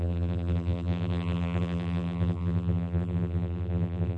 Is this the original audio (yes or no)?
no